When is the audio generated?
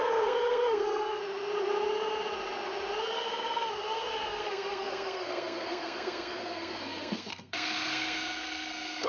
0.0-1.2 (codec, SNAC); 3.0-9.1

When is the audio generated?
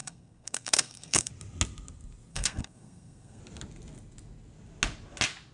0.0-1.3 (codec, SNAC); 2.3-3.4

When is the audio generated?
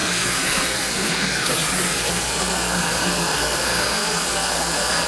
0.0-1.5 (codec, SNAC); 1.9-5.1